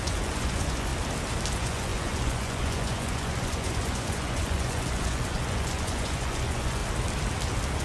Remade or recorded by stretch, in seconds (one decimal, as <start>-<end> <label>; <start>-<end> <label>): 0.0-0.9 remade; 0.9-1.5 recorded; 1.5-6.8 remade; 6.8-7.8 recorded